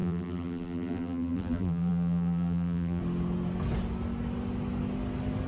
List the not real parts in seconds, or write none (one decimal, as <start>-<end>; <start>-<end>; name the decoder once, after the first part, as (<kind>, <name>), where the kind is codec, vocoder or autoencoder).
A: 0.0-3.0 (vocoder, BigVGAN v2)